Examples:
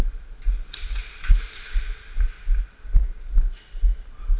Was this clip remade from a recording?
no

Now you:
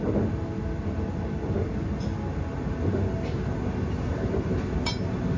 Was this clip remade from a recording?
no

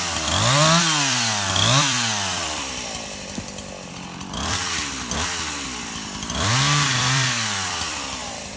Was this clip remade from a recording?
yes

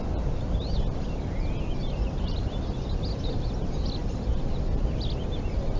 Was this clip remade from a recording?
no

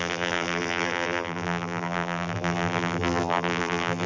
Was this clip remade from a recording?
yes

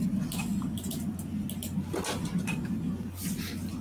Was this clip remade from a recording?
no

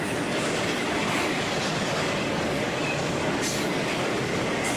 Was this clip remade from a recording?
yes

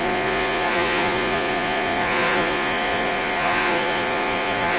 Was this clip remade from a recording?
yes